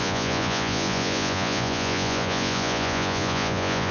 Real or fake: fake